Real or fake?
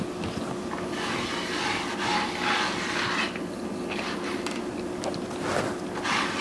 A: real